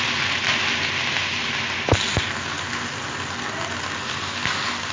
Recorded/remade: recorded